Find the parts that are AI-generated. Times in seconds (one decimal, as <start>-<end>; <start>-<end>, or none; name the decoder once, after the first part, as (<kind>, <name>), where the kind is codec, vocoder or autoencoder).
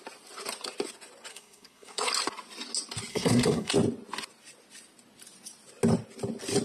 1.3-2.1 (codec, SNAC); 3.1-3.7